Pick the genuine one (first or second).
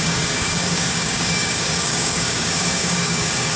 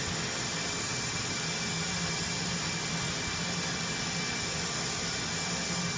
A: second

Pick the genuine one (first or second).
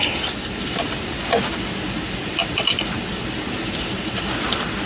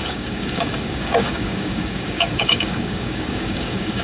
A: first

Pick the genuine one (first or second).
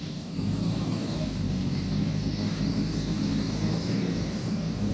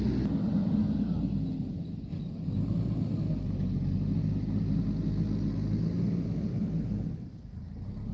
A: second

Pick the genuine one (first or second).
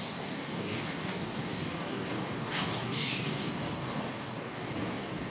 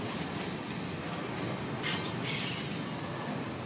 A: second